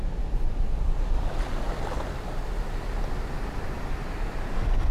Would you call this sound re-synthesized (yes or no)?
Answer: no